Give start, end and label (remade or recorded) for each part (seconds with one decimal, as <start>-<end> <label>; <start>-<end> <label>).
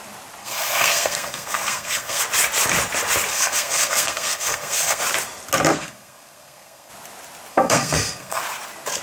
0.0-0.4 recorded; 0.4-2.2 remade; 2.2-3.3 recorded; 3.3-5.0 remade; 5.0-5.7 recorded; 5.7-6.9 remade; 6.9-7.5 recorded; 7.5-8.4 remade; 8.4-9.0 recorded